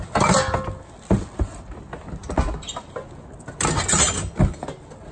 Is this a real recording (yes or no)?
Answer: yes